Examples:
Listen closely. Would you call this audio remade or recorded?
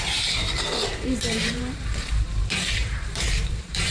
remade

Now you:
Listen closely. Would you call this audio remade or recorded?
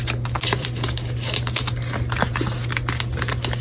recorded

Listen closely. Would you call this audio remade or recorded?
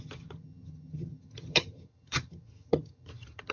remade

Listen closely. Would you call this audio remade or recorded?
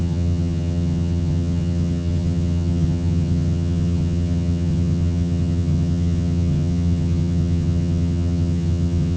remade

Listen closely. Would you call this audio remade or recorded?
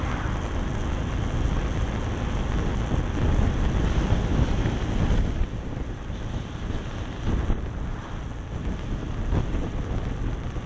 recorded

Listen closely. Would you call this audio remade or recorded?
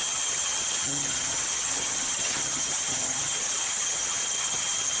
remade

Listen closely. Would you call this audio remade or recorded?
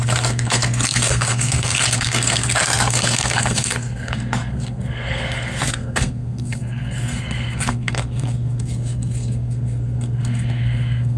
remade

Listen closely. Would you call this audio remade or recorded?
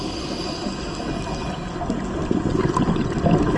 recorded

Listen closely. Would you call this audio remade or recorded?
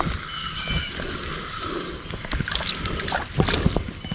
recorded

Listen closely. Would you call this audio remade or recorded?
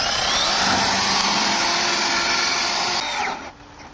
recorded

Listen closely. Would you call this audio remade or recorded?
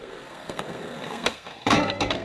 remade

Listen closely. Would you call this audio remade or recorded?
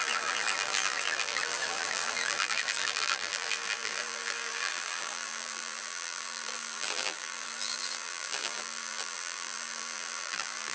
remade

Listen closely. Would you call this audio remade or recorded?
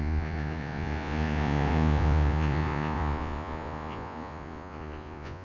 remade